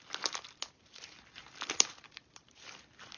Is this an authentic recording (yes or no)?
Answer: yes